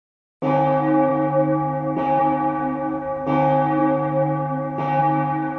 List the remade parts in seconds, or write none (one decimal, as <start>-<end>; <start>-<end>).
none